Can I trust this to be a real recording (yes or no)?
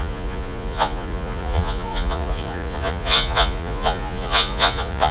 no